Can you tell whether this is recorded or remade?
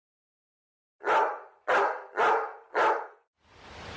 recorded